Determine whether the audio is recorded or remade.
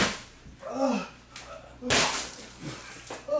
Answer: recorded